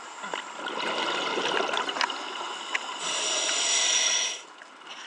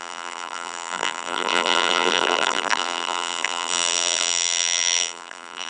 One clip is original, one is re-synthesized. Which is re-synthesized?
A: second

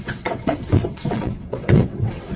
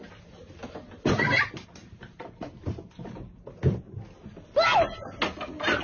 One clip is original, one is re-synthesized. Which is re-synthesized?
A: first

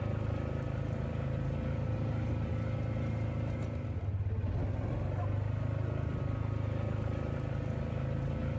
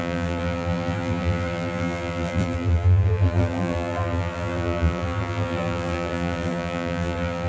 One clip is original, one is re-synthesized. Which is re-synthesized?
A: second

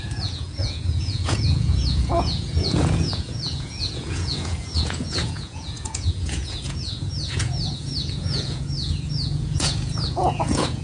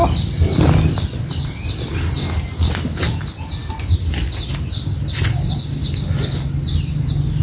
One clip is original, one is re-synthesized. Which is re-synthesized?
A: first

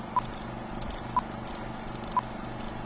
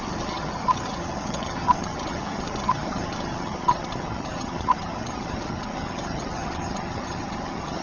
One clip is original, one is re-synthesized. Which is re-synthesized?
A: second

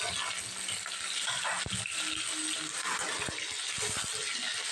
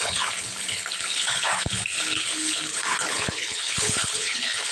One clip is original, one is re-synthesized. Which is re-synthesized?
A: second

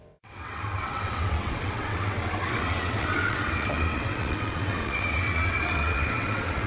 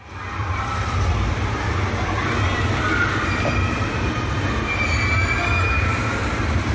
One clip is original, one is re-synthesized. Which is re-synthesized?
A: first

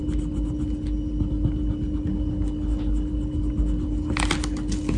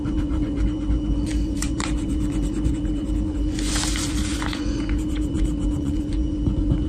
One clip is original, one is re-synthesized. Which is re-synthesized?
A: second